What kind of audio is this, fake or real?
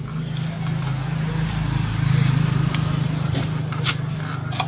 real